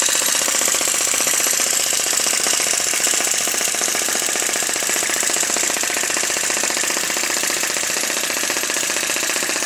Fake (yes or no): no